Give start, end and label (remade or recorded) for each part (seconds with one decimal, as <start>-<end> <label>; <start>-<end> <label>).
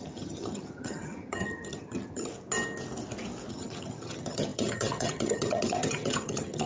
0.0-2.3 remade; 2.3-3.5 recorded; 3.5-6.7 remade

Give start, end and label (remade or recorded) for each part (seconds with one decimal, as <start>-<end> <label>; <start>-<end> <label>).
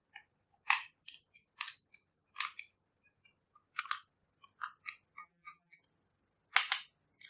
0.0-5.2 recorded; 5.2-5.8 remade; 5.8-7.3 recorded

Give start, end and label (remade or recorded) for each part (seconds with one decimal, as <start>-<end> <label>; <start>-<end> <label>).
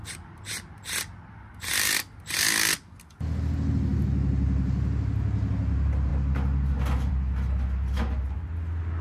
0.0-9.0 recorded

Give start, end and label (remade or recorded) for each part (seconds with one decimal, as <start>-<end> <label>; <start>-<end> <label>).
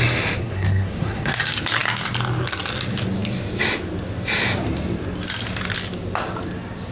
0.0-0.4 recorded; 0.4-1.4 remade; 1.4-6.9 recorded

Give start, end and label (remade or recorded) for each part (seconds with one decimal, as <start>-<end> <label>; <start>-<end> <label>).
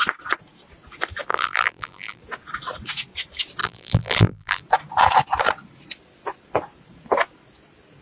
0.0-1.3 recorded; 1.3-2.2 remade; 2.2-3.6 recorded; 3.6-4.6 remade; 4.6-8.0 recorded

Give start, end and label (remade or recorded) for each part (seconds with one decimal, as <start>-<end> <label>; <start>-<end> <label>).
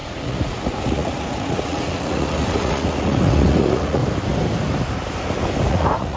0.0-4.0 remade; 4.0-5.7 recorded; 5.7-6.2 remade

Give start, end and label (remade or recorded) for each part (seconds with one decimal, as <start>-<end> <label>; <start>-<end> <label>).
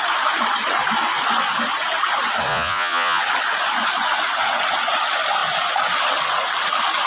0.0-2.5 recorded; 2.5-3.2 remade; 3.2-7.1 recorded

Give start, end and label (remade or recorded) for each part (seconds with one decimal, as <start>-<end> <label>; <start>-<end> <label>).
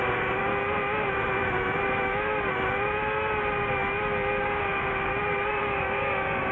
0.0-0.5 remade; 0.5-4.4 recorded; 4.4-5.1 remade; 5.1-5.6 recorded; 5.6-6.5 remade